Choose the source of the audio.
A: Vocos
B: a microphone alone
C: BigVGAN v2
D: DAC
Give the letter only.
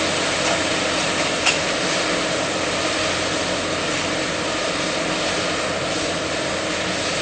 B